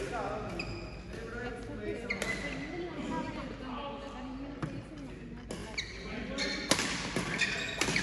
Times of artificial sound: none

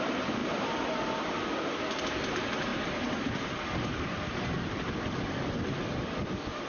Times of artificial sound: none

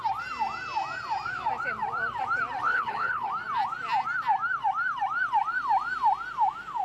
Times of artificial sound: 2.6-3.3 (codec, HILCodec)

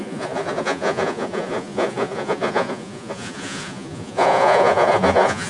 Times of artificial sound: 0.0-5.5 (vocoder, Vocos)

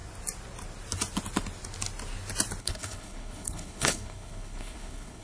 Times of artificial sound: 2.6-5.2 (codec, HILCodec)

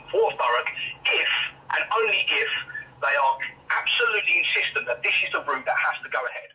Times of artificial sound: 0.0-6.5 (vocoder, Vocos)

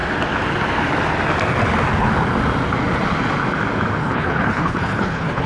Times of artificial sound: 4.0-5.5 (codec, HILCodec)